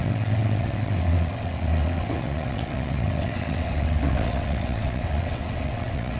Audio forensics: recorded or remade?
remade